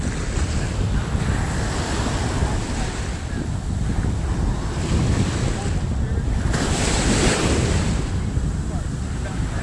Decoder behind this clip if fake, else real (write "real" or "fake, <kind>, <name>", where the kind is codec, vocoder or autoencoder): real